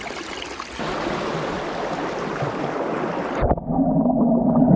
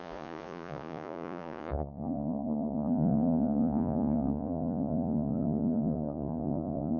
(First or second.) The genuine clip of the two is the first